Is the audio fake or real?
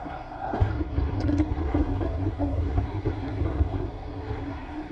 fake